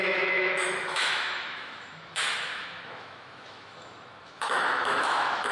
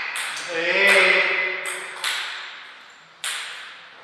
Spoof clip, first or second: first